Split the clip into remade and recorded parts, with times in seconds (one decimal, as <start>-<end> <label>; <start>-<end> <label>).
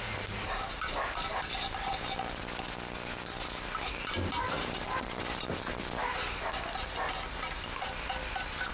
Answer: 0.0-2.4 remade; 2.4-3.8 recorded; 3.8-6.0 remade; 6.0-8.7 recorded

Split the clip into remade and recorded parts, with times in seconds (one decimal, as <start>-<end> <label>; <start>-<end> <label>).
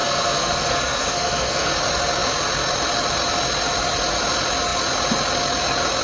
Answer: 0.0-1.7 remade; 1.7-6.0 recorded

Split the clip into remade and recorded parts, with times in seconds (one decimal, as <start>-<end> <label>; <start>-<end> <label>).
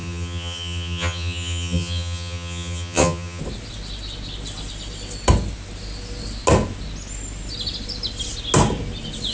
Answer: 0.0-3.4 remade; 3.4-9.3 recorded